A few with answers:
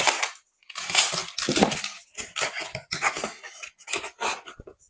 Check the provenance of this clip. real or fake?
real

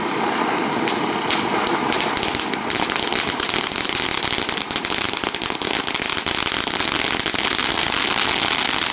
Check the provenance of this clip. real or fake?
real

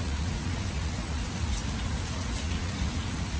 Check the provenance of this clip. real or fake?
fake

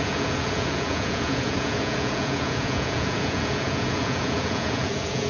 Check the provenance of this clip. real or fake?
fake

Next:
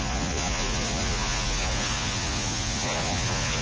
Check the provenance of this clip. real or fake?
fake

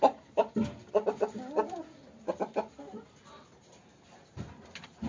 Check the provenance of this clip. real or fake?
real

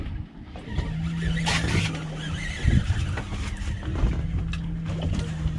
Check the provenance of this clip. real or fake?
real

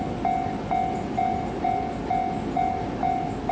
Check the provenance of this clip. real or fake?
real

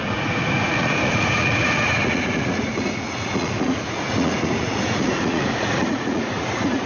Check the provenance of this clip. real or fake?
fake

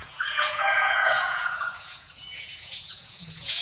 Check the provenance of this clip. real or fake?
fake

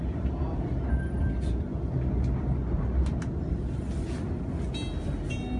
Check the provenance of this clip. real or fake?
real